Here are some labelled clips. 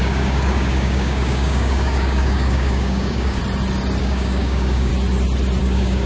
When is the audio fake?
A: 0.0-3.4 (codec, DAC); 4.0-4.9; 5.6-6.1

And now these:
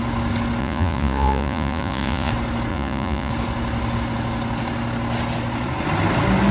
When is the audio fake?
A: 0.6-2.3 (vocoder, Vocos); 2.7-3.3

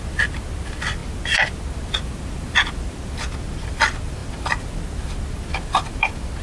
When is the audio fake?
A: none